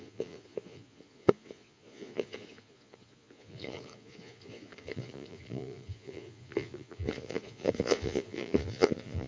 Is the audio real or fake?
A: fake